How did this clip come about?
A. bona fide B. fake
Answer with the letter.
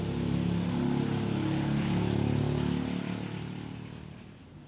A